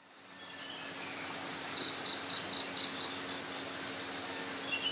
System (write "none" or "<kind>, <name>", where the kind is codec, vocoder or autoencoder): none